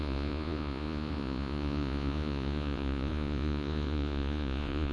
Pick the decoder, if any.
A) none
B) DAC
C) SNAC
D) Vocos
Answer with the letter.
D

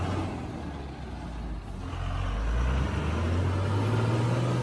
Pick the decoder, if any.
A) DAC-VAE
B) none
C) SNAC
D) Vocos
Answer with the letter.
B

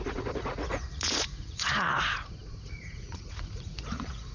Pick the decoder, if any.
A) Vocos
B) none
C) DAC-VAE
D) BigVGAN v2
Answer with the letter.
A